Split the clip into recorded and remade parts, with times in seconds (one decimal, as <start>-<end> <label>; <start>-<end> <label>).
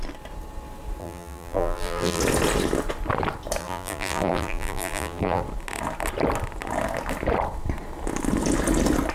0.0-1.0 recorded; 1.0-2.2 remade; 2.2-3.6 recorded; 3.6-5.4 remade; 5.4-9.1 recorded